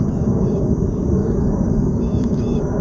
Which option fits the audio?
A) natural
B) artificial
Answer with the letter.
B